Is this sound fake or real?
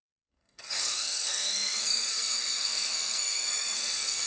fake